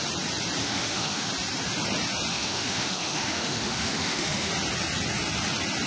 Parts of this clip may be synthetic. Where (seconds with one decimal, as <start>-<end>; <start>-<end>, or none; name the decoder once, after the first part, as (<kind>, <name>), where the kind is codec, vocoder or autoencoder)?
0.6-1.3 (autoencoder, DAC-VAE); 2.3-4.5